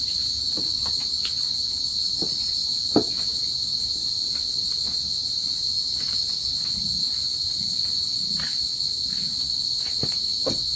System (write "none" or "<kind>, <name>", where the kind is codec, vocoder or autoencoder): none